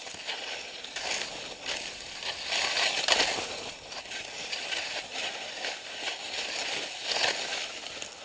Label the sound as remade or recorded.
recorded